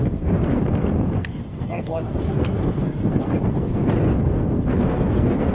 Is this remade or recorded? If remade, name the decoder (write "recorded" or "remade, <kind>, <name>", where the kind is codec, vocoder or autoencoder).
remade, codec, SNAC